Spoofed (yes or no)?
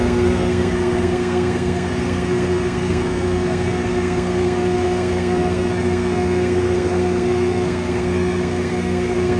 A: yes